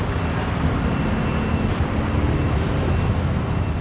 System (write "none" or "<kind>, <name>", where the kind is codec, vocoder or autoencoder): none